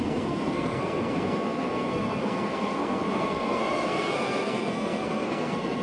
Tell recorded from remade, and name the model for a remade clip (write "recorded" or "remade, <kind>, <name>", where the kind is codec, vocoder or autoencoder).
remade, codec, SNAC